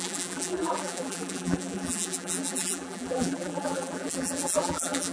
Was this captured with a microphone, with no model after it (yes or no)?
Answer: no